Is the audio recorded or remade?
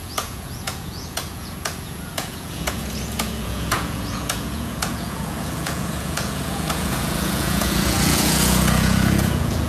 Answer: remade